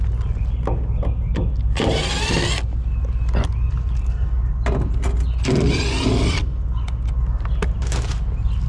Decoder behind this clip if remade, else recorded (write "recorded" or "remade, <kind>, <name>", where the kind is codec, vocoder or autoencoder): recorded